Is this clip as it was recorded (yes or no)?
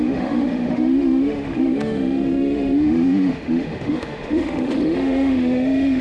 no